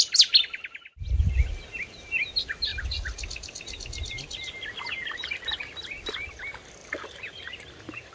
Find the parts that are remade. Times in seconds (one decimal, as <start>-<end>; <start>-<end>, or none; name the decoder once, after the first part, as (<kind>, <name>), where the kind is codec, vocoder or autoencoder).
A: 6.8-8.1 (vocoder, BigVGAN v2)